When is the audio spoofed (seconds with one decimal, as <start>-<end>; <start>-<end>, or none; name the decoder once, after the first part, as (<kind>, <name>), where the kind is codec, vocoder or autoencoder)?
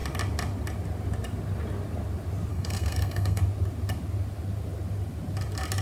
2.5-3.4 (codec, SNAC)